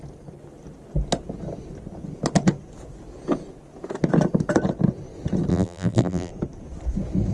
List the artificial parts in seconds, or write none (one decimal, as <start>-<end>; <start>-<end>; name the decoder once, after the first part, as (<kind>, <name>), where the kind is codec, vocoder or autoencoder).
5.5-6.3 (vocoder, BigVGAN v2)